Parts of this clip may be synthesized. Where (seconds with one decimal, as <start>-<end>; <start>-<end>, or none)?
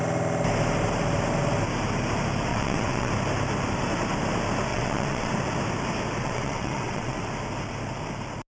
2.5-3.1; 4.7-5.3; 6.2-7.3